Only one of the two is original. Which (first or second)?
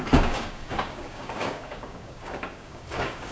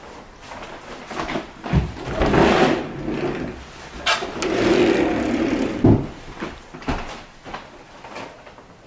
second